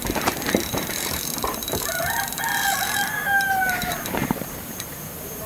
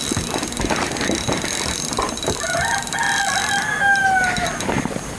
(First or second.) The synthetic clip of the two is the first